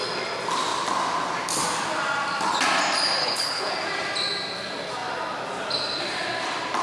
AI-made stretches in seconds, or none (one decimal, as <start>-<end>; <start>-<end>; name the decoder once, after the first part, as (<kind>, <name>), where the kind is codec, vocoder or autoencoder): 3.2-3.7 (codec, HILCodec)